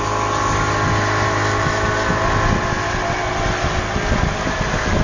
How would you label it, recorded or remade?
recorded